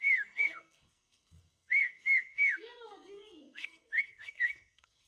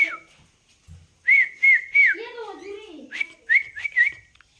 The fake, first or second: first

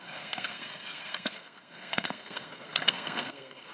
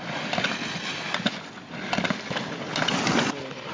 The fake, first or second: first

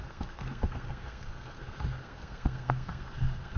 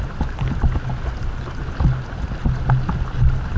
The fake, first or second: first